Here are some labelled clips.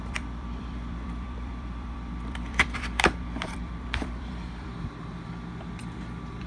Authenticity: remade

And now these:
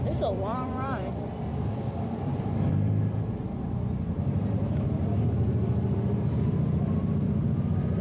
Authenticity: remade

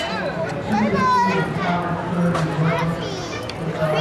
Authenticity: recorded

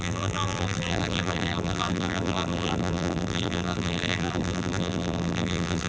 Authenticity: remade